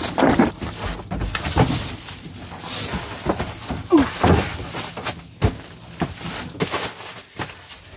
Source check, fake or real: real